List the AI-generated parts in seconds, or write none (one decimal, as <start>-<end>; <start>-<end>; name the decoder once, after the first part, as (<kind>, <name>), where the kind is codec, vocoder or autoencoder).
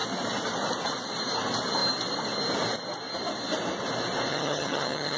4.3-5.2 (vocoder, HiFi-GAN)